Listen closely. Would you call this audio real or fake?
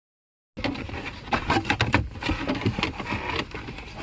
real